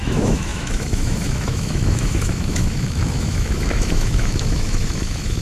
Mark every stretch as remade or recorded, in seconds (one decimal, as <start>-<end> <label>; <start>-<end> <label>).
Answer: 0.0-5.4 remade